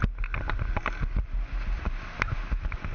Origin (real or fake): real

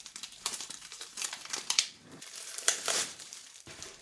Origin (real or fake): fake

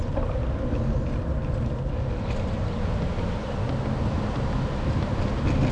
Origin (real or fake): real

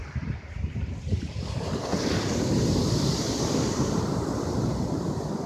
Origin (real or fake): fake